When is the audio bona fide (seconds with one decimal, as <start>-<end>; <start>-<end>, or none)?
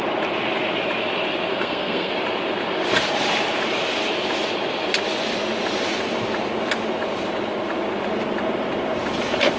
0.0-1.5; 2.1-9.6